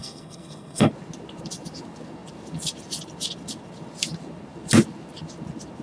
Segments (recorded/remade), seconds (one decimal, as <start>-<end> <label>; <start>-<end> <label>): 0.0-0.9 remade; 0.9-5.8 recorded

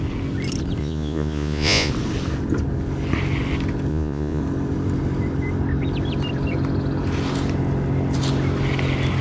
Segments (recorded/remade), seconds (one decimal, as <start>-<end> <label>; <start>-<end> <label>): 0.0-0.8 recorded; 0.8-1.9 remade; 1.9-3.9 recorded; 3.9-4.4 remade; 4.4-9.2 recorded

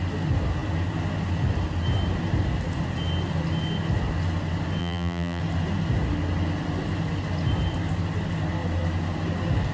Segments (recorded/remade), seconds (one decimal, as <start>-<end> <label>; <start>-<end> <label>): 0.0-4.8 recorded; 4.8-5.4 remade; 5.4-9.7 recorded

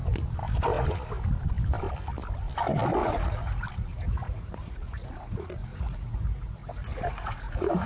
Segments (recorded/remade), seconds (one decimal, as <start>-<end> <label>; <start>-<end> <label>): 0.0-3.0 recorded; 3.0-7.9 remade

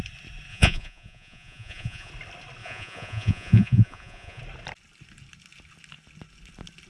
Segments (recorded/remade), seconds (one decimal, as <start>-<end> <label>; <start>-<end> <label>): 0.0-0.5 recorded; 0.5-2.1 remade; 2.1-2.6 recorded; 2.6-4.4 remade; 4.4-6.9 recorded